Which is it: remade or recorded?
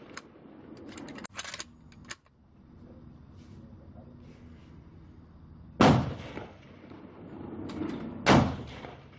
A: recorded